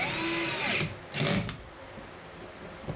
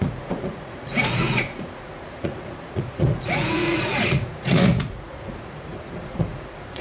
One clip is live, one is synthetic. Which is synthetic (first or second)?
second